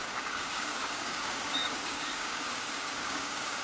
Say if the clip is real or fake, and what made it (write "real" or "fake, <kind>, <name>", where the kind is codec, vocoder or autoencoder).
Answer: fake, codec, DAC